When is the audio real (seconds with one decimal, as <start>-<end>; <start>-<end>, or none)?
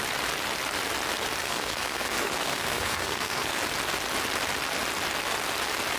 0.0-1.4; 3.6-6.0